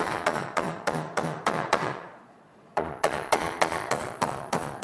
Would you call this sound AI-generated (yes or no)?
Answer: yes